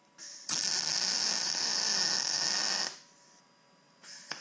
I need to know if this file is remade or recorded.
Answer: recorded